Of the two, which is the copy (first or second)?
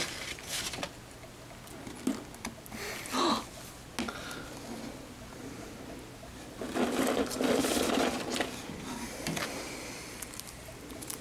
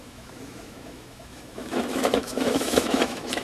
second